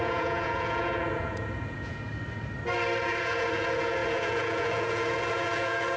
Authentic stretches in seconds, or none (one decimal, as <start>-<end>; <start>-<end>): 2.0-3.0